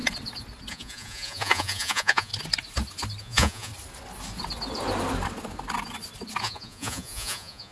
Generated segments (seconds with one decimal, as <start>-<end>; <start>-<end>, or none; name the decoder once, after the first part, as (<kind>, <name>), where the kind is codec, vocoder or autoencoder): 0.7-2.3 (vocoder, Vocos); 3.2-3.7; 6.4-7.7